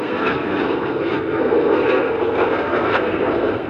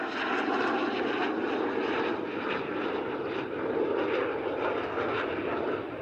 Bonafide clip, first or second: second